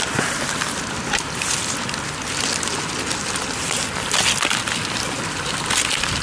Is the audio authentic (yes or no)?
yes